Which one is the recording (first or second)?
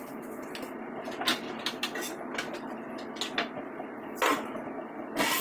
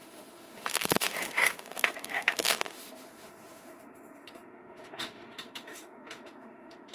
first